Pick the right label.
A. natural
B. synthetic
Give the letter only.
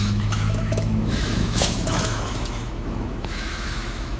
B